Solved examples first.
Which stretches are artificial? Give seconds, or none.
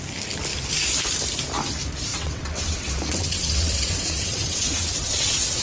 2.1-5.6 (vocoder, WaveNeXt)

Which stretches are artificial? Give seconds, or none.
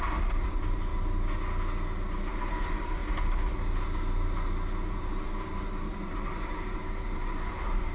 0.0-0.9 (vocoder, BigVGAN v2); 2.3-3.0; 4.9-7.9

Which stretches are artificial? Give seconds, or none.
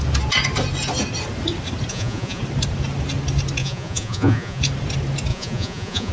1.9-2.4 (vocoder, Vocos); 3.6-4.6; 5.3-6.1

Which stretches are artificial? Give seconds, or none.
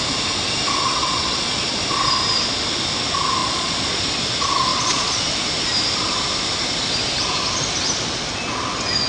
1.0-1.8 (vocoder, Vocos); 3.4-4.0; 4.7-5.3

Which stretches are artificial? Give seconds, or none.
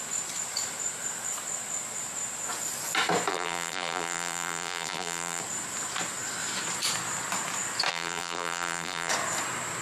3.3-5.4 (vocoder, BigVGAN v2); 7.9-9.1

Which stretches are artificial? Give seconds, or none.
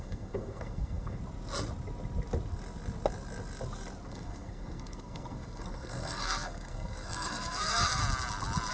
0.0-1.2 (codec, SNAC); 4.1-8.0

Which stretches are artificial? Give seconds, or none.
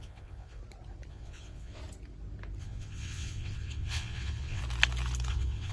0.0-0.6 (vocoder, WaveNeXt); 1.1-1.8; 2.6-4.6; 5.3-5.7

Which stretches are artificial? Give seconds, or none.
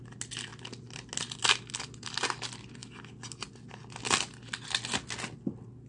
none